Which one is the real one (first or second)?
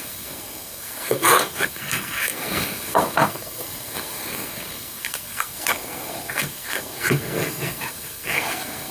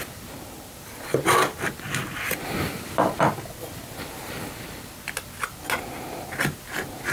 second